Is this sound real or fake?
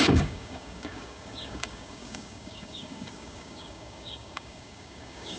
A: fake